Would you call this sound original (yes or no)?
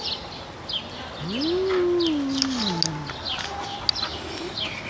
yes